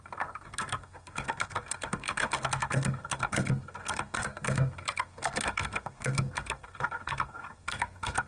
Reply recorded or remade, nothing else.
remade